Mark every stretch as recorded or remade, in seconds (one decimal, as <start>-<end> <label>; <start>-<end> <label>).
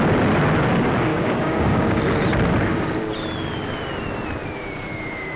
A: 0.0-1.1 recorded; 1.1-2.0 remade; 2.0-5.4 recorded